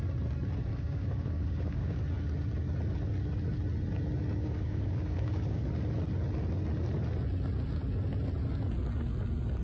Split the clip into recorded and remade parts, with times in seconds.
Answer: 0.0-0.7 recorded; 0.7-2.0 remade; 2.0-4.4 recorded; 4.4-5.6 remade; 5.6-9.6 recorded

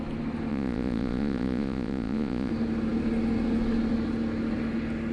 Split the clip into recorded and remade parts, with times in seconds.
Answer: 0.0-0.5 recorded; 0.5-2.5 remade; 2.5-5.1 recorded

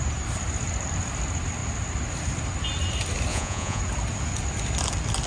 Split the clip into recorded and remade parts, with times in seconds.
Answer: 0.0-3.3 recorded; 3.3-3.8 remade; 3.8-5.3 recorded

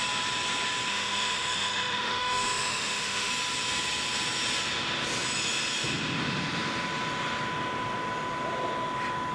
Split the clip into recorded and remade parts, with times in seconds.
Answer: 0.0-0.9 recorded; 0.9-3.3 remade; 3.3-9.3 recorded

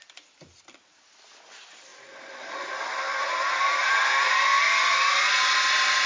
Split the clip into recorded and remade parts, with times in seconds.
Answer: 0.0-6.1 recorded